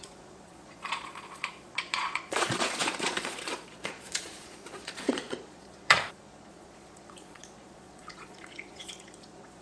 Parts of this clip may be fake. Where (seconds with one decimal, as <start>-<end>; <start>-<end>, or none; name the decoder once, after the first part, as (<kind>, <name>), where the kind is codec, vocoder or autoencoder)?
0.0-9.6 (vocoder, Vocos)